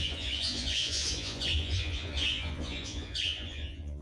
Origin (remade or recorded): remade